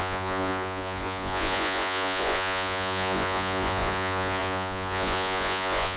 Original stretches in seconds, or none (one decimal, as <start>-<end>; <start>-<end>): none